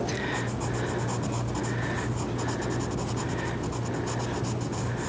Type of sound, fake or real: real